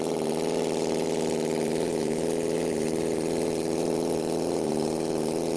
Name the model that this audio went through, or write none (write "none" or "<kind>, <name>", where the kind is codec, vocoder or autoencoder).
none